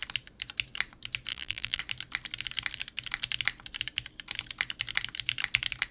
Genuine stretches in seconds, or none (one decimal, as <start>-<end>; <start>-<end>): 0.0-1.3; 1.8-5.9